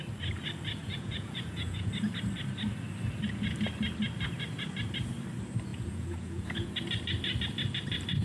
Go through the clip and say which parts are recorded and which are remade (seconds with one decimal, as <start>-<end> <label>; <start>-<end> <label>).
0.0-0.8 recorded; 0.8-1.9 remade; 1.9-5.7 recorded; 5.7-6.7 remade; 6.7-8.2 recorded